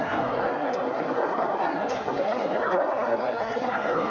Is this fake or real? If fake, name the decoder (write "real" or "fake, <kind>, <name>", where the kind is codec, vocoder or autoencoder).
fake, codec, SNAC